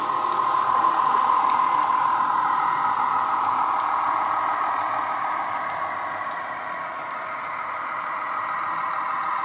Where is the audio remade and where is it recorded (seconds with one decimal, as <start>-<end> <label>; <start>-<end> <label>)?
0.0-1.9 recorded; 1.9-3.0 remade; 3.0-5.0 recorded; 5.0-8.6 remade; 8.6-9.4 recorded